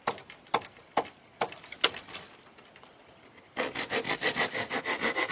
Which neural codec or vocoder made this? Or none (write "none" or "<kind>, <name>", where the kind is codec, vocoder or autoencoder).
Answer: none